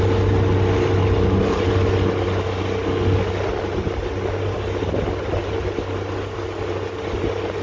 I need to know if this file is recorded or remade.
recorded